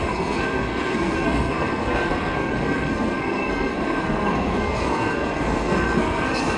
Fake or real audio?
fake